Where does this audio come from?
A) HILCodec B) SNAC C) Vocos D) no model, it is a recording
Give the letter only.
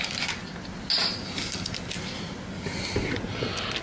D